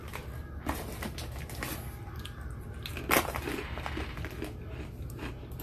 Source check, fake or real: real